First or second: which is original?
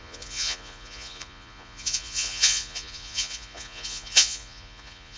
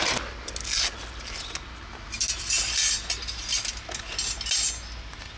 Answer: second